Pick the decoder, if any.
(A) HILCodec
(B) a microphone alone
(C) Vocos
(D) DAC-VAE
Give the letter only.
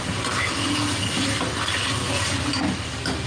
B